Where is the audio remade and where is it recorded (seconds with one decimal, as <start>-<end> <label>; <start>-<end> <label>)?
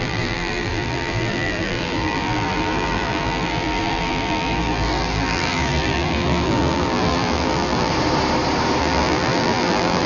0.0-7.9 remade; 7.9-8.8 recorded; 8.8-10.1 remade